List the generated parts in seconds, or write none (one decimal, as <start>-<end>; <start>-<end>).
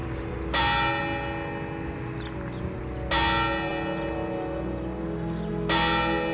none